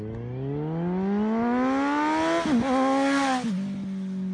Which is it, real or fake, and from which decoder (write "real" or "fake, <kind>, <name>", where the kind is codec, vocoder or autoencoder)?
real